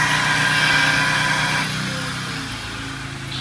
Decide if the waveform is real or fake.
real